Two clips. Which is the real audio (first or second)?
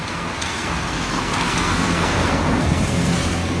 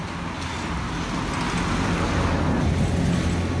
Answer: second